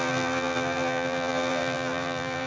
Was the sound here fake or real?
fake